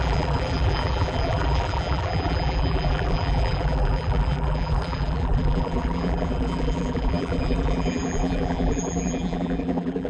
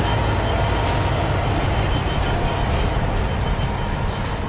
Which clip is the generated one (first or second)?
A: first